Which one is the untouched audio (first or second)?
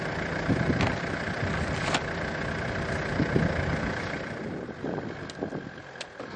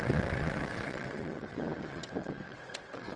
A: first